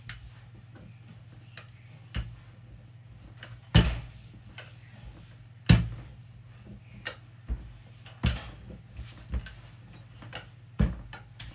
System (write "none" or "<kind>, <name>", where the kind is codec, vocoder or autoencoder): none